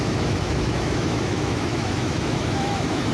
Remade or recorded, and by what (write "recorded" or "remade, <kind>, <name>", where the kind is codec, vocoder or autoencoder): remade, autoencoder, DAC-VAE